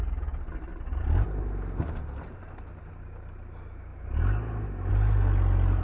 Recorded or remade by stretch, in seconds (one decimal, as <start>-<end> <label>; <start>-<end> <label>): 0.0-5.8 recorded